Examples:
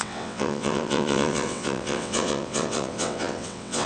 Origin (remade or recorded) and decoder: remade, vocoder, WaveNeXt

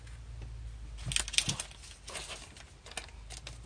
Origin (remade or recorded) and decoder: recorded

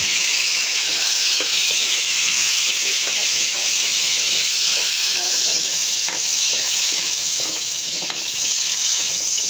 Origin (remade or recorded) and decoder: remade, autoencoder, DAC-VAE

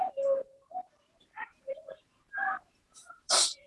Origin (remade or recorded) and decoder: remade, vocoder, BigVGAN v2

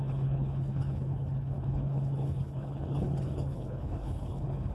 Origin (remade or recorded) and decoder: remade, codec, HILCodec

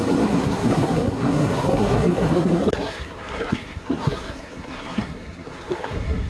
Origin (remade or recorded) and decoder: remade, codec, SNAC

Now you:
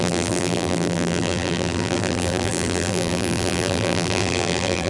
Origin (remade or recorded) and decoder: remade, vocoder, BigVGAN v2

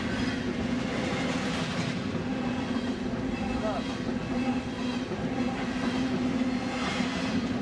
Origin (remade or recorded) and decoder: recorded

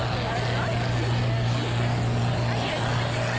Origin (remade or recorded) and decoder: recorded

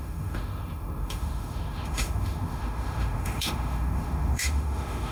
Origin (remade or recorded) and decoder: remade, autoencoder, DAC-VAE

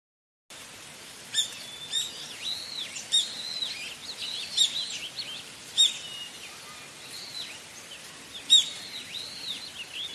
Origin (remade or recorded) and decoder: recorded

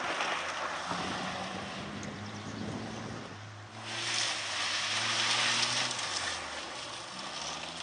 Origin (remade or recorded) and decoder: recorded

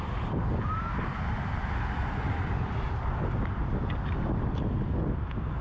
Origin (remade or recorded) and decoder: recorded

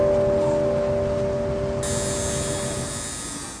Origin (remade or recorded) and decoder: recorded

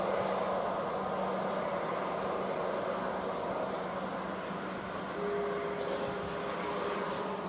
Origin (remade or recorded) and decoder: recorded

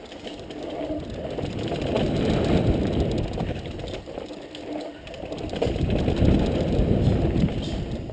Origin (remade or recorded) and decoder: recorded